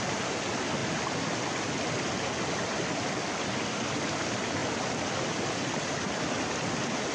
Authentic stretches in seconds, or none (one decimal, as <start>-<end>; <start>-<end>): 0.0-7.1